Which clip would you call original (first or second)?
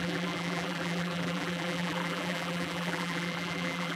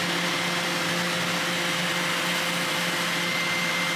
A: second